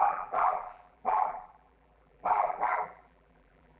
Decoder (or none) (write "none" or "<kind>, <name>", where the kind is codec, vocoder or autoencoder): vocoder, BigVGAN v2